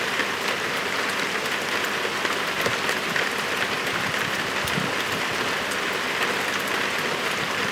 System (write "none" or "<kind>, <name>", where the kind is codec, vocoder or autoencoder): none